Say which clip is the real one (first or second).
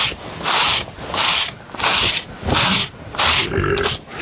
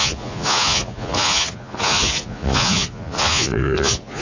first